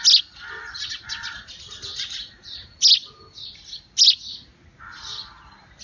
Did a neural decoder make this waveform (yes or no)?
no